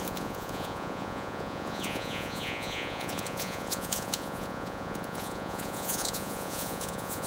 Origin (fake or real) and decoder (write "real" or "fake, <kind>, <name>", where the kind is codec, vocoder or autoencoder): fake, vocoder, Vocos